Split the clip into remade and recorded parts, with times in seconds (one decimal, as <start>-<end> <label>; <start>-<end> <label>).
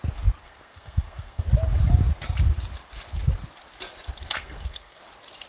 0.0-0.4 recorded; 0.4-1.4 remade; 1.4-4.4 recorded; 4.4-5.0 remade; 5.0-5.5 recorded